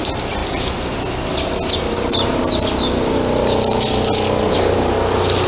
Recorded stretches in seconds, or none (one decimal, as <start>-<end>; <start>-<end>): 0.0-5.5